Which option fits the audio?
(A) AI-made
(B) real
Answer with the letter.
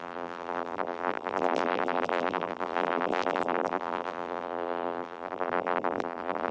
A